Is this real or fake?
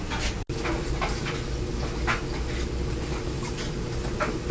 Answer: real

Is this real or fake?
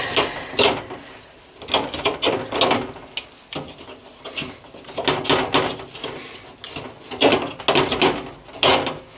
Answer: real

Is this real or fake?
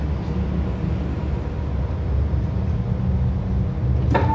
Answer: real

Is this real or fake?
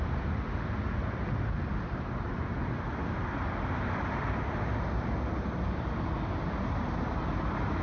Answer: real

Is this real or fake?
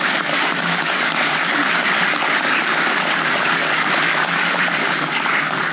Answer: fake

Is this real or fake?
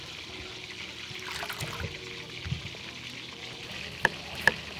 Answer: real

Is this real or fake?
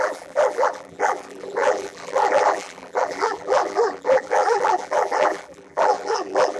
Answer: fake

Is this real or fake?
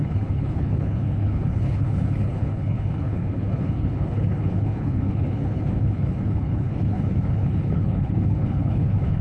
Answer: fake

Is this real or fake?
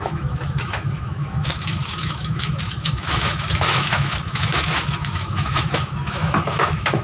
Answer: fake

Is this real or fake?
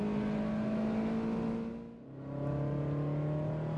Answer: real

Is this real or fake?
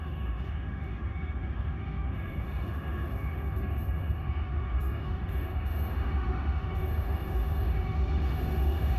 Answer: fake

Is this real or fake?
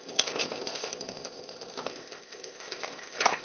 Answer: fake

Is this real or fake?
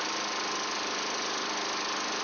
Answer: real